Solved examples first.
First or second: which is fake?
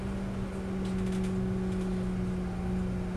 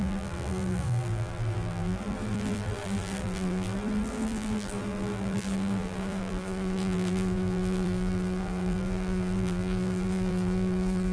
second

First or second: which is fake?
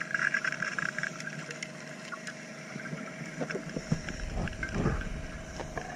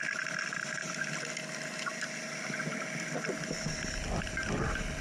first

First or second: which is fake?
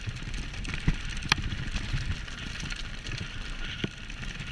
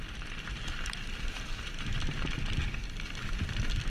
first